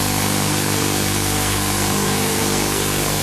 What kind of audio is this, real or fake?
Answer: fake